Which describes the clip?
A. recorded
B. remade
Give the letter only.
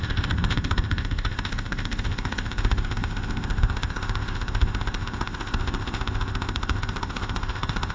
B